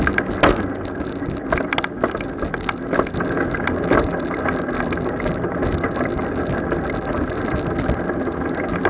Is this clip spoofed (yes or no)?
no